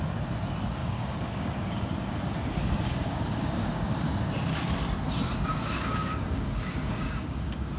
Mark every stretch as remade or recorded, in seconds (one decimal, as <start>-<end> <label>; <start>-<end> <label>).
0.0-0.8 recorded; 0.8-1.9 remade; 1.9-2.6 recorded; 2.6-4.3 remade; 4.3-5.5 recorded; 5.5-7.8 remade